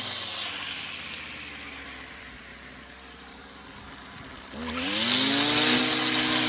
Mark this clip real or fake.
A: real